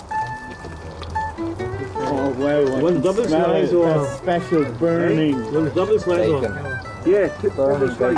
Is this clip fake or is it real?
real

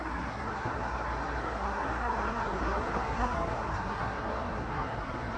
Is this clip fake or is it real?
fake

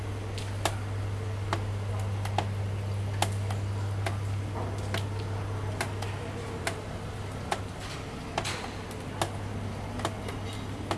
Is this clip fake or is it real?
real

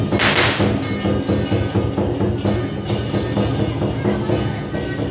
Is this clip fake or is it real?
real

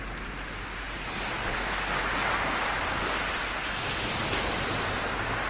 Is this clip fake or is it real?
real